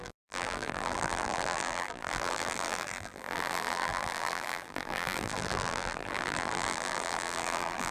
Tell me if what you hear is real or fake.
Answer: fake